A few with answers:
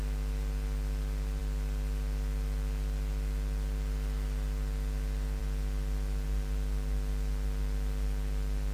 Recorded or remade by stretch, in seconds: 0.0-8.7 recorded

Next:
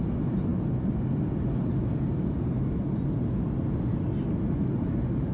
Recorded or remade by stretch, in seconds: 0.0-5.3 recorded

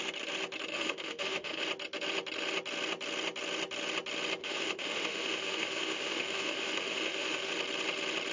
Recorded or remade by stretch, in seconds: 0.0-0.7 recorded; 0.7-1.6 remade; 1.6-4.4 recorded; 4.4-7.5 remade; 7.5-8.3 recorded

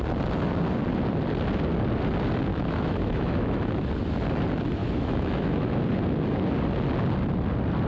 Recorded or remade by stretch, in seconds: 0.0-2.5 recorded; 2.5-3.7 remade; 3.7-4.8 recorded; 4.8-5.8 remade; 5.8-7.9 recorded

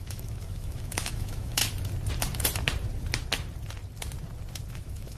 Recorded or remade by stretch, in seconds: 0.0-1.6 remade; 1.6-4.7 recorded; 4.7-5.2 remade